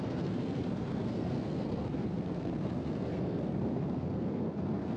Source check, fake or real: fake